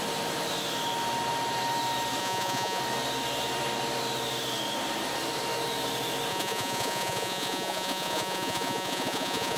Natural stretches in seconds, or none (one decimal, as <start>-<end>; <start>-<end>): 0.0-2.2; 2.8-6.3